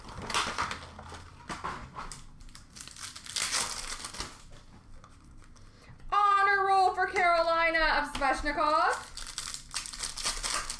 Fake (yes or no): no